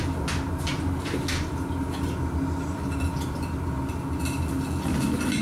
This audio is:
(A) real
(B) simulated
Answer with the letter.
A